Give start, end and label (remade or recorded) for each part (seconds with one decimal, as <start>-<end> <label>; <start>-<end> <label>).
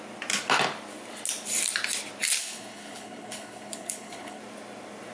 0.0-2.4 recorded; 2.4-4.4 remade; 4.4-5.1 recorded